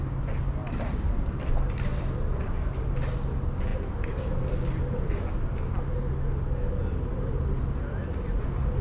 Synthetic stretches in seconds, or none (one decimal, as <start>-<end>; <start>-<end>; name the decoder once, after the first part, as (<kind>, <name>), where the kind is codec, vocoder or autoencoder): 0.6-1.5 (vocoder, BigVGAN v2); 1.9-2.8